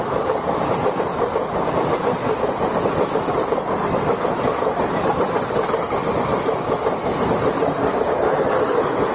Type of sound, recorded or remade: recorded